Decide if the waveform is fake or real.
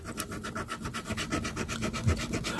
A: real